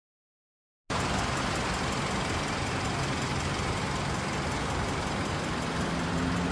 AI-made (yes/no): no